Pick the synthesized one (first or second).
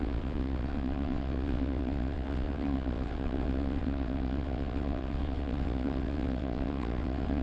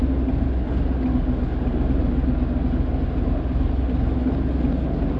first